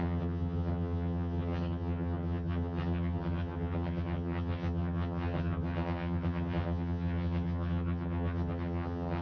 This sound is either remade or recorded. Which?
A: remade